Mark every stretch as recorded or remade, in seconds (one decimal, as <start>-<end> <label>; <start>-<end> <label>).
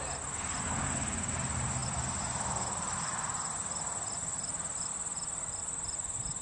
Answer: 0.0-6.4 recorded